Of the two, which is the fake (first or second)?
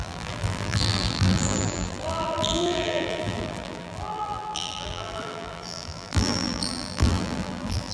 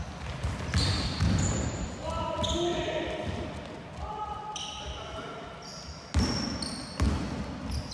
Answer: first